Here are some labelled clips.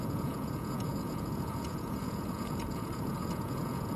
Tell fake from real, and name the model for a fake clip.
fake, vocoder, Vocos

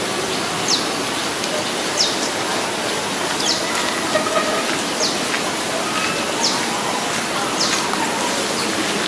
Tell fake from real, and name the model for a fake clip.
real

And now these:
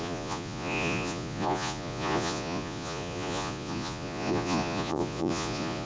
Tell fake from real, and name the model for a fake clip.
fake, vocoder, Vocos